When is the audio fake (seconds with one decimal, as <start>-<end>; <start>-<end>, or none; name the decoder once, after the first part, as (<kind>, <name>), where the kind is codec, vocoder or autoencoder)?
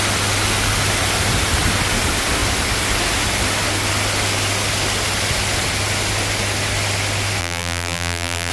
7.4-8.5 (vocoder, BigVGAN v2)